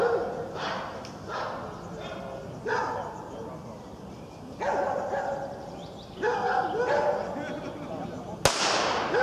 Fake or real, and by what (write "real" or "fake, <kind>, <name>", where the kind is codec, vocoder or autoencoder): real